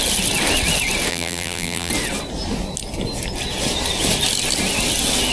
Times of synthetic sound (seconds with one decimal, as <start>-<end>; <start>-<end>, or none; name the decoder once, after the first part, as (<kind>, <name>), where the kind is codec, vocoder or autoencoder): 1.1-1.9 (vocoder, BigVGAN v2)